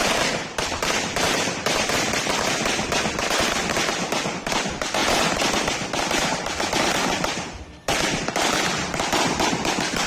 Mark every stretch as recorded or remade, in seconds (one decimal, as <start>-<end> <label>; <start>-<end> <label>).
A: 0.0-3.2 remade; 3.2-3.8 recorded; 3.8-5.0 remade; 5.0-7.2 recorded; 7.2-10.1 remade